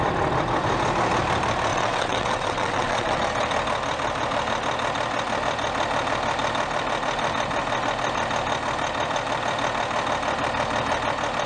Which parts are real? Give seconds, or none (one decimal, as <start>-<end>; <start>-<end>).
0.0-1.7; 3.2-11.5